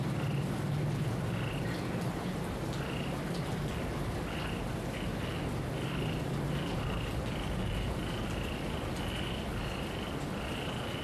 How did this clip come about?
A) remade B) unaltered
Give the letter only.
B